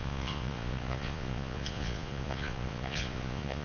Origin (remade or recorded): remade